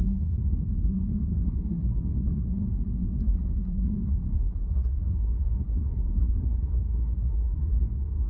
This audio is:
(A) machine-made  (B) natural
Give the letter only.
A